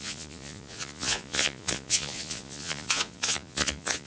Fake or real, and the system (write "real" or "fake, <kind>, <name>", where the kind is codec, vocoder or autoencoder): fake, vocoder, Vocos